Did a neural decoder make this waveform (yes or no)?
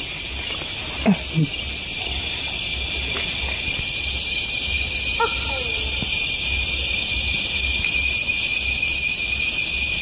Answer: no